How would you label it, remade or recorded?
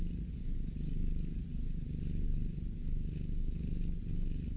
recorded